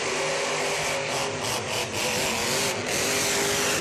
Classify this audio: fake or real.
real